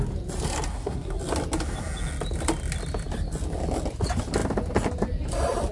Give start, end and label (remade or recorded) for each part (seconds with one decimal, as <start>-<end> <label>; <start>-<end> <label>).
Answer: 0.0-0.7 recorded; 0.7-1.2 remade; 1.2-5.7 recorded